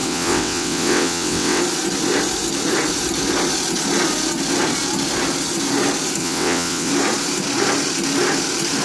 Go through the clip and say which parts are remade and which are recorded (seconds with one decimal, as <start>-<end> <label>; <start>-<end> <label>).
0.0-1.6 remade; 1.6-6.2 recorded; 6.2-6.9 remade; 6.9-8.8 recorded